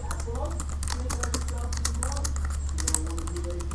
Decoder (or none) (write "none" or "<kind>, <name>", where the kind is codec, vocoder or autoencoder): none